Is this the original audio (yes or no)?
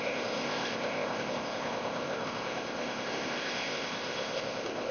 no